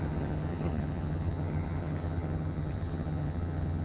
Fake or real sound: fake